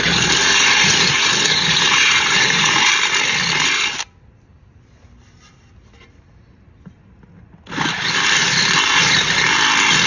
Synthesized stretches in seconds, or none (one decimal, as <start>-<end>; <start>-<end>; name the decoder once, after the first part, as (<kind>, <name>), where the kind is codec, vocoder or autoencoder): 0.4-2.9 (vocoder, Vocos)